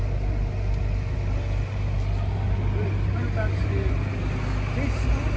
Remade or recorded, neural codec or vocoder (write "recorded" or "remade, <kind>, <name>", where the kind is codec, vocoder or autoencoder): recorded